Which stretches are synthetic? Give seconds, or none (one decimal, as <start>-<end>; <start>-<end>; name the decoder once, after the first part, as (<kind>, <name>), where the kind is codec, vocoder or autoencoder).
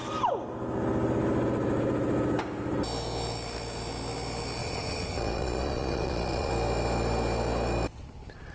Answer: 4.6-6.5 (vocoder, Vocos)